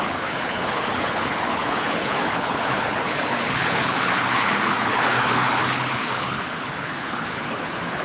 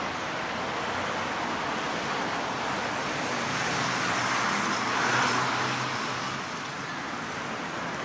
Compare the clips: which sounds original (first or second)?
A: second